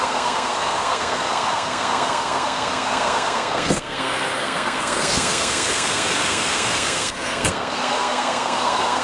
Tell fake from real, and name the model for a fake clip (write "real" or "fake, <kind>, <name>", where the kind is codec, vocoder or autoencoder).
fake, codec, SNAC